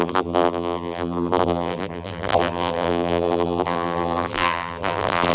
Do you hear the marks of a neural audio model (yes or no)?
yes